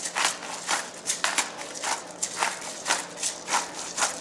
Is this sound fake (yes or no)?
no